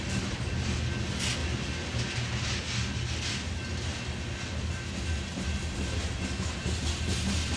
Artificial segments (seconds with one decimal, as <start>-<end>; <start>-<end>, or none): none